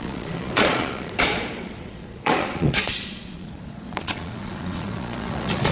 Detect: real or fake fake